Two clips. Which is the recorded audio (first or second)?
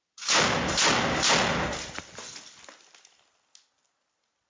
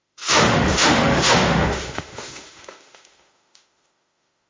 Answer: first